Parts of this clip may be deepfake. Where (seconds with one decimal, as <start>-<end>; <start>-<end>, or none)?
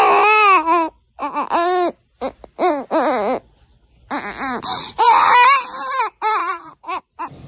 4.7-5.3; 6.4-7.0